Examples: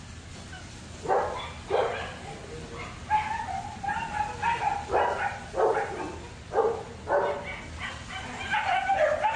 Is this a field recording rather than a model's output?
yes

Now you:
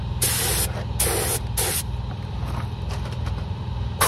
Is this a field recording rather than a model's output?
yes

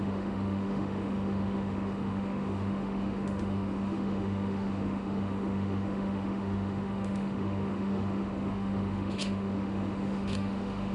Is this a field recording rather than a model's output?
no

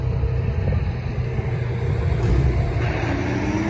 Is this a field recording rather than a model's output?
yes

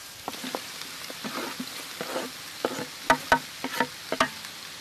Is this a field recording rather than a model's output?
yes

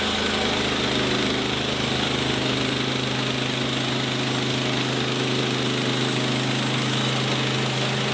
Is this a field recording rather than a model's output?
yes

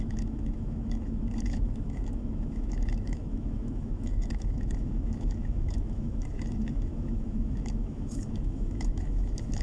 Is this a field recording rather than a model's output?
no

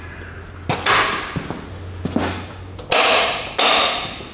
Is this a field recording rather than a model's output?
yes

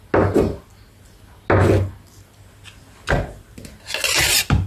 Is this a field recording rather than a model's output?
yes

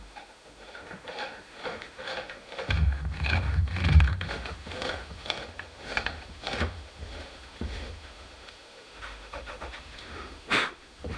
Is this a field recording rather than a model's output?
no